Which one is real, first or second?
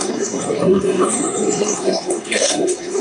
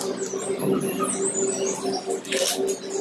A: second